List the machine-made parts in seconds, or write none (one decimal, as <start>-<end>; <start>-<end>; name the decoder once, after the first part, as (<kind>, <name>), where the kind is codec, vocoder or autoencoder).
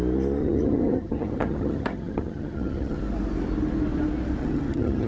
0.4-3.0 (vocoder, HiFi-GAN); 4.4-5.1